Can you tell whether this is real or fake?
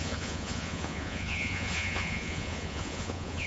fake